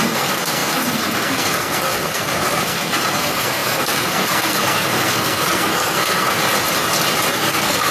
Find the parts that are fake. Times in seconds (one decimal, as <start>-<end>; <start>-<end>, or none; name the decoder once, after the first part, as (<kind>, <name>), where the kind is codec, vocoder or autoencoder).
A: 0.0-6.4 (codec, SNAC); 7.3-7.9